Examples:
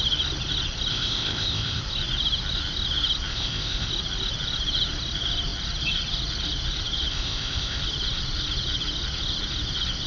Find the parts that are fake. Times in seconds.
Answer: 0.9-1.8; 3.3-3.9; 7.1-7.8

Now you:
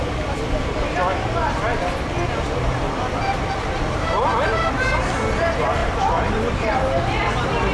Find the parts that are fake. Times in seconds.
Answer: none

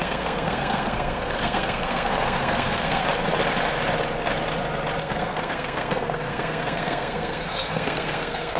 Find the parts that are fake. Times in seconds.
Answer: 0.0-3.0; 5.0-8.6

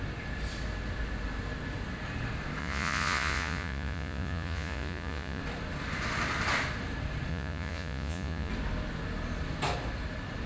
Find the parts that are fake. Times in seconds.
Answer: 2.6-5.4; 7.3-8.5